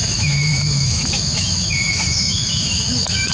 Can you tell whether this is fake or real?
fake